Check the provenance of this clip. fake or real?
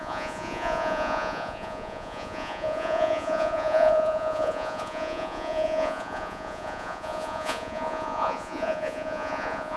fake